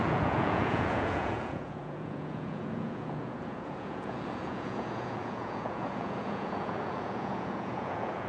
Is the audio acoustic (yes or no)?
no